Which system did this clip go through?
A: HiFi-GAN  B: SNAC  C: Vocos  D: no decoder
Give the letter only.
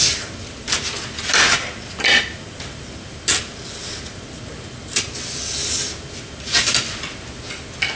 D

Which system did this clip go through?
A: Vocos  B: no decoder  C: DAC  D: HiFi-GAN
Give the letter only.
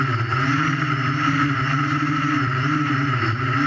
B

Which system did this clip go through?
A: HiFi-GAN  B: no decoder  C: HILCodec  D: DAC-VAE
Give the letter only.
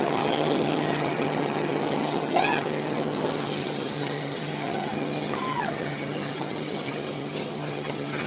A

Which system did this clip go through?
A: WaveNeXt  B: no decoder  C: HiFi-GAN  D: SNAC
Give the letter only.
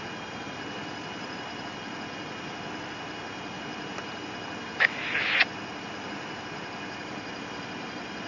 B